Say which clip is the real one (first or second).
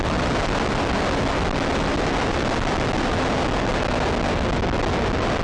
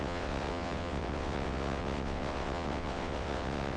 first